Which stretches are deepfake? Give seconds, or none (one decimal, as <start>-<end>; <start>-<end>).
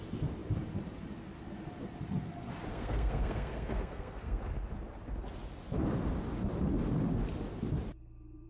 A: 2.7-4.4